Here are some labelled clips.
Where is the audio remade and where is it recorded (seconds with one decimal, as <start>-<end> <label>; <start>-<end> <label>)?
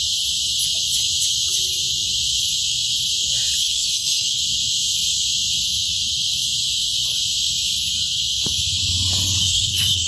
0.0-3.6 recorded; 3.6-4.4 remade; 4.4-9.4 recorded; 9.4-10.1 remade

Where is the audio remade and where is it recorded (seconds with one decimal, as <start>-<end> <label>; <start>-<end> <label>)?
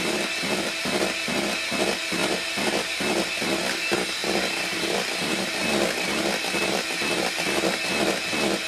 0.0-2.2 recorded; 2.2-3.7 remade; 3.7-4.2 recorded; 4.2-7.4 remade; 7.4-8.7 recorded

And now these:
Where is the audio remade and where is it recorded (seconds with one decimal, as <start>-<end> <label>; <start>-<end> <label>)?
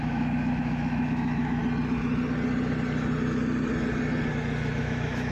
0.0-1.6 remade; 1.6-4.8 recorded; 4.8-5.3 remade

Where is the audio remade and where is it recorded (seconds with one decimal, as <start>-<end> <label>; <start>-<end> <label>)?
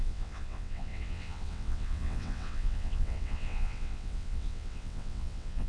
0.0-5.7 remade